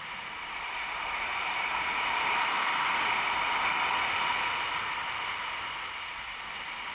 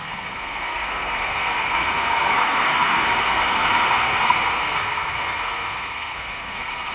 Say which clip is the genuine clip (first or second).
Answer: first